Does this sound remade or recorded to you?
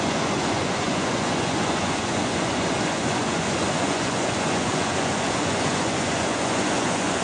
remade